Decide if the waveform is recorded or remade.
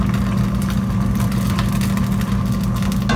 recorded